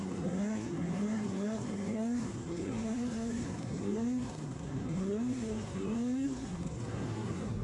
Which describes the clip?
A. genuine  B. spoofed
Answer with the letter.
B